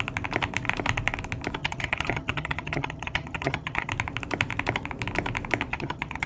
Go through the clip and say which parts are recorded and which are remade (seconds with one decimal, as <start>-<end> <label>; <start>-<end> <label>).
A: 0.0-1.6 recorded; 1.6-3.9 remade; 3.9-5.7 recorded; 5.7-6.3 remade